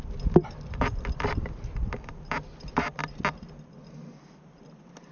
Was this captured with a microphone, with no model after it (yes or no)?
yes